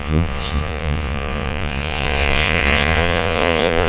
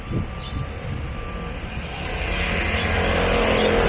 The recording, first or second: second